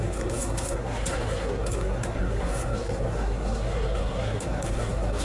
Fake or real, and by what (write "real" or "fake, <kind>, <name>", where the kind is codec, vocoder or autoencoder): fake, codec, SNAC